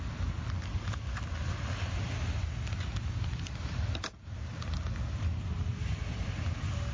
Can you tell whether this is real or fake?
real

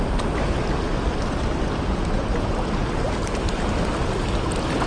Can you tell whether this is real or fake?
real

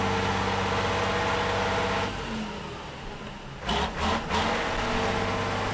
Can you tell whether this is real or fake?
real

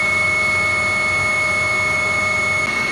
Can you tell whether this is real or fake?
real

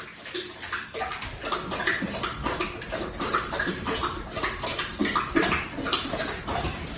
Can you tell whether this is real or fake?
real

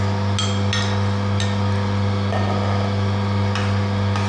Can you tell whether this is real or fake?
real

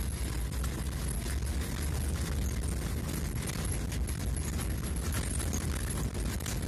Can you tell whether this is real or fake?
real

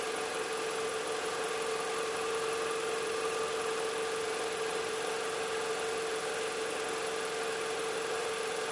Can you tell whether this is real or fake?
real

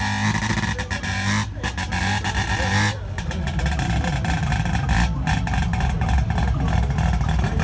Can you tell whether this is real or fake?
real